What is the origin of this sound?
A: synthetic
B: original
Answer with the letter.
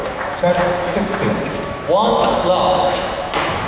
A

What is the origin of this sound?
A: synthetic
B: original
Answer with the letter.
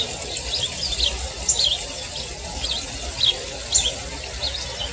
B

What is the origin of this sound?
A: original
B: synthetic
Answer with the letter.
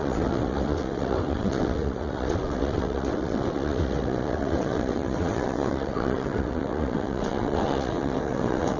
B